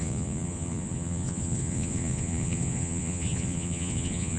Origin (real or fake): fake